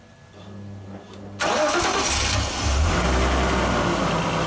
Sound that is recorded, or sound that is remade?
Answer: recorded